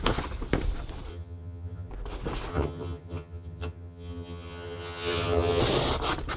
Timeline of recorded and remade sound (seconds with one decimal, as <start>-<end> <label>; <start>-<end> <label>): 0.0-1.1 recorded; 1.1-1.9 remade; 1.9-2.5 recorded; 2.5-5.6 remade; 5.6-6.4 recorded